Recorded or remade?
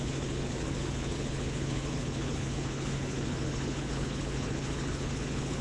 remade